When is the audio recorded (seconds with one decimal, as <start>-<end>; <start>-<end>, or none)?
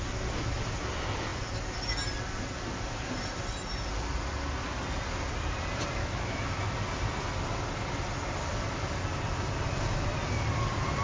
0.0-6.0; 6.6-11.0